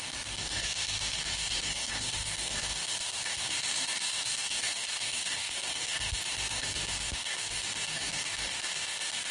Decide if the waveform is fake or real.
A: fake